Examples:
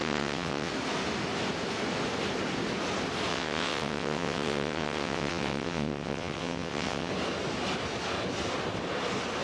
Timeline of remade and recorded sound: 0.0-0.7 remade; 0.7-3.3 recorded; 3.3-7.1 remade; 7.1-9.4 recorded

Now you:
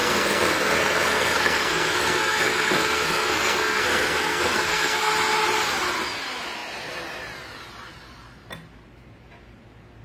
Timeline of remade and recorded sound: 0.0-5.1 remade; 5.1-10.0 recorded

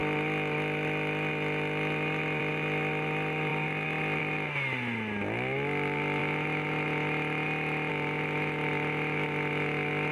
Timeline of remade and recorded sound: 0.0-10.1 recorded

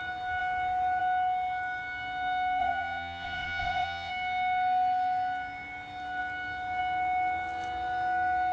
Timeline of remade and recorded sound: 0.0-2.6 recorded; 2.6-4.1 remade; 4.1-8.5 recorded

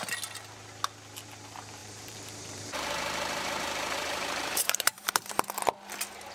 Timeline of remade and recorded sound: 0.0-1.8 recorded; 1.8-5.1 remade; 5.1-6.3 recorded

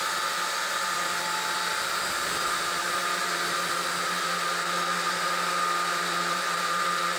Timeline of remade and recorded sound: 0.0-7.2 recorded

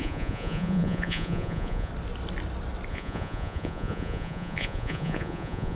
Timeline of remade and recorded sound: 0.0-1.9 remade; 1.9-2.9 recorded; 2.9-5.8 remade